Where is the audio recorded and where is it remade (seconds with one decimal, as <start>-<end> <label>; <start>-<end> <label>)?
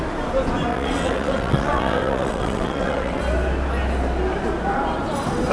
0.0-0.7 recorded; 0.7-3.2 remade; 3.2-5.5 recorded